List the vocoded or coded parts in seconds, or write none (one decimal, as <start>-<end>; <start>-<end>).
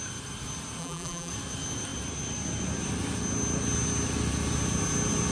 0.8-1.3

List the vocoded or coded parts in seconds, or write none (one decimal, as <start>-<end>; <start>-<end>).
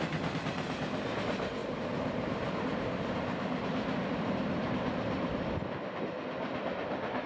1.6-6.0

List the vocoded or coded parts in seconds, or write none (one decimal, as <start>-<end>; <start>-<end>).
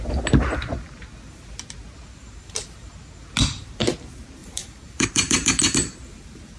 2.1-2.9; 3.4-3.9; 4.4-6.6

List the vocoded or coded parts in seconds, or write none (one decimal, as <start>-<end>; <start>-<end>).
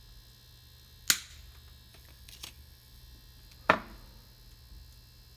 1.9-3.0